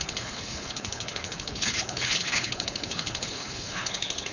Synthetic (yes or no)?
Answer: yes